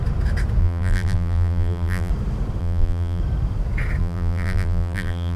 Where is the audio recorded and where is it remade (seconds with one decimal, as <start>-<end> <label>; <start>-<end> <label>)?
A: 0.0-0.6 recorded; 0.6-2.1 remade; 2.1-2.6 recorded; 2.6-3.2 remade; 3.2-4.0 recorded; 4.0-5.4 remade

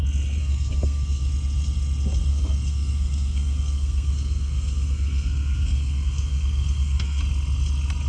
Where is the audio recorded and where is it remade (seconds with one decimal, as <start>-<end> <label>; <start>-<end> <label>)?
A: 0.0-0.4 recorded; 0.4-1.2 remade; 1.2-2.3 recorded; 2.3-7.2 remade; 7.2-8.1 recorded

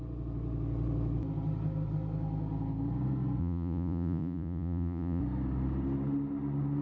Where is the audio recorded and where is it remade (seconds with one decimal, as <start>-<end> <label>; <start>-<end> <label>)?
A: 0.0-3.4 recorded; 3.4-5.2 remade; 5.2-6.8 recorded

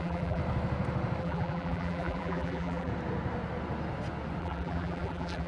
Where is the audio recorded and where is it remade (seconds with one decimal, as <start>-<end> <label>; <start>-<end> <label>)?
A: 0.0-0.4 remade; 0.4-1.2 recorded; 1.2-2.9 remade; 2.9-4.4 recorded; 4.4-5.5 remade